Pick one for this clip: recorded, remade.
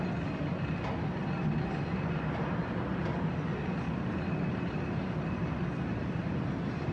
recorded